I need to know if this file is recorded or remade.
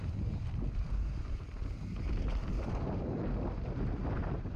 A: recorded